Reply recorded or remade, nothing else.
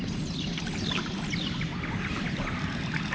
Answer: recorded